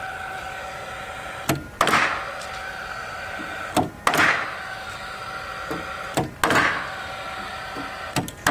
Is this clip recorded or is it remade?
recorded